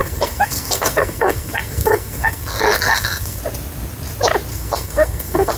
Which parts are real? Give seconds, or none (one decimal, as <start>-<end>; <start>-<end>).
3.4-4.5